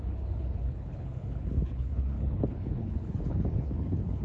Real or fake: fake